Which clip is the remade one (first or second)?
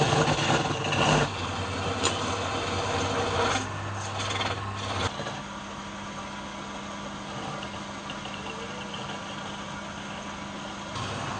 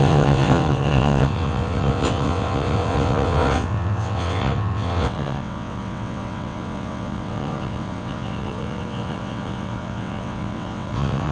second